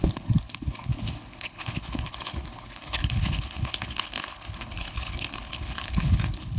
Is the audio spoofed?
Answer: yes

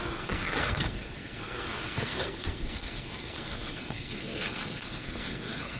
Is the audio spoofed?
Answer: yes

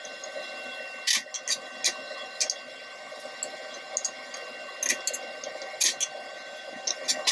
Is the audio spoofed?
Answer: no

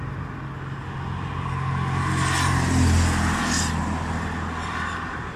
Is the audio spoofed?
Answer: no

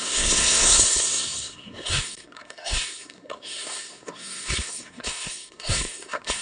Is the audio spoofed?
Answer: yes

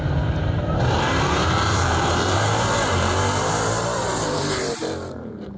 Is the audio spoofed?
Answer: yes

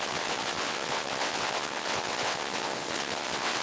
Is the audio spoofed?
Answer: yes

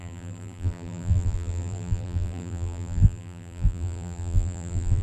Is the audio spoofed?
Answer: yes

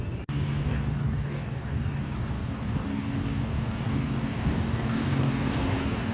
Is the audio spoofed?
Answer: yes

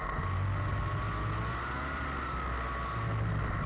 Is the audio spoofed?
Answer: no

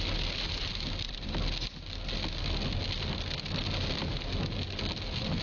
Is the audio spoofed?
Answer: no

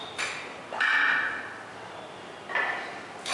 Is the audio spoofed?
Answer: no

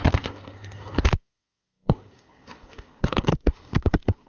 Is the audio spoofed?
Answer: yes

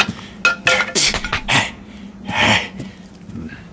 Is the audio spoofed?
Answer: no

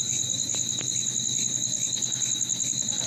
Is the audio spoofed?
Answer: no